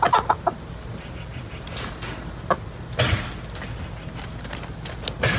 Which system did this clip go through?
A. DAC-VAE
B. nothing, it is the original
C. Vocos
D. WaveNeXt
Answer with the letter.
B